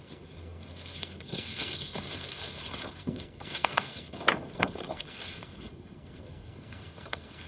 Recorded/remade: remade